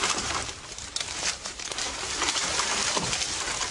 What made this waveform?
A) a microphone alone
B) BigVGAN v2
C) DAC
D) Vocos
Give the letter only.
B